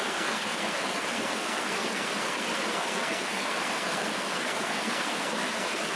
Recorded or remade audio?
remade